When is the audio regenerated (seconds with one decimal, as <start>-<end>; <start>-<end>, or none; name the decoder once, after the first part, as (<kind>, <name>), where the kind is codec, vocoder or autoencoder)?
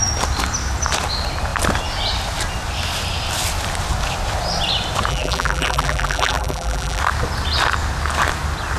5.1-7.0 (vocoder, BigVGAN v2)